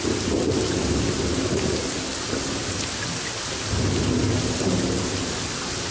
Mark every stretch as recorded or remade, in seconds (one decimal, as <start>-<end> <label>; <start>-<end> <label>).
0.0-5.9 recorded